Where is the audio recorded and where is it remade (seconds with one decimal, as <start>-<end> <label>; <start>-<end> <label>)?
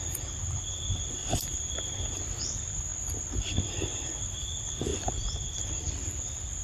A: 0.0-1.2 recorded; 1.2-2.4 remade; 2.4-4.9 recorded; 4.9-5.6 remade; 5.6-6.6 recorded